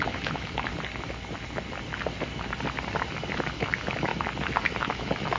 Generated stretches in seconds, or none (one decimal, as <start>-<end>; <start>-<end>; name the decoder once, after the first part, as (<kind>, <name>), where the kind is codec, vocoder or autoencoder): 0.0-0.7 (autoencoder, DAC-VAE); 3.5-4.1; 4.6-5.4